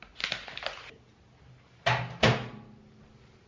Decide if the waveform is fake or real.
real